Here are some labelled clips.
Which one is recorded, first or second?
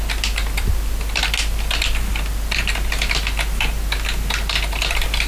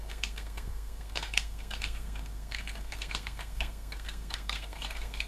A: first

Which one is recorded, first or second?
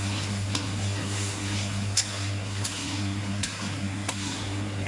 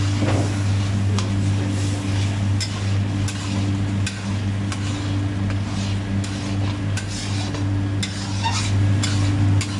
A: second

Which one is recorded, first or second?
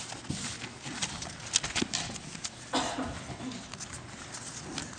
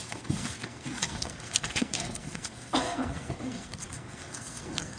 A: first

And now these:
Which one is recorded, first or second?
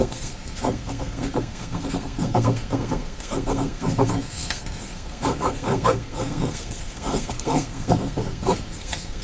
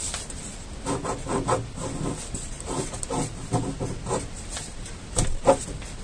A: second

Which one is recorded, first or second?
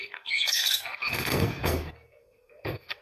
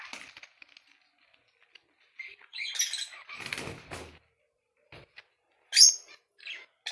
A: second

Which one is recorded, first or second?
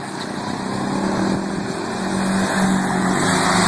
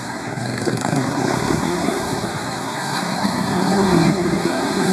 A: first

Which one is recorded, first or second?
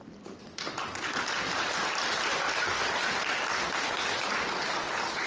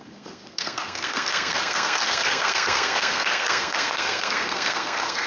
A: first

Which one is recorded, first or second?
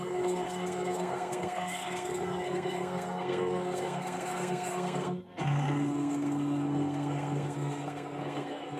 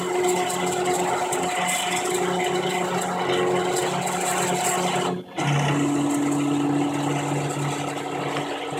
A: second